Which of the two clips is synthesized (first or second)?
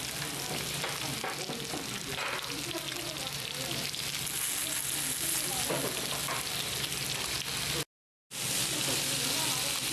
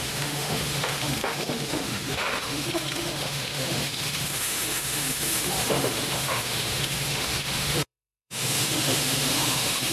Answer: second